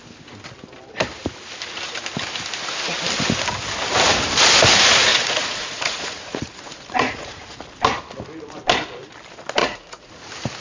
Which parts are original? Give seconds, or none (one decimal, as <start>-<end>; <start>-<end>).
0.0-5.1; 7.6-9.6; 10.1-10.6